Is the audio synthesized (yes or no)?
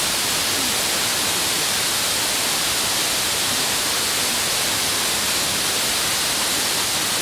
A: no